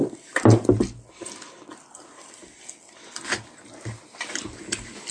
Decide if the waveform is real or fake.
real